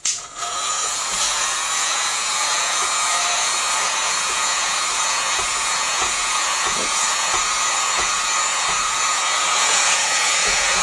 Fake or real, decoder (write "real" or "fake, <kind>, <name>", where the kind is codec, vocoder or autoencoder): fake, vocoder, Vocos